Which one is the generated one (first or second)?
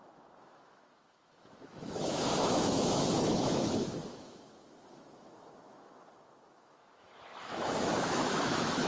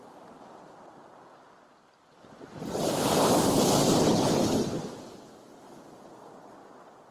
first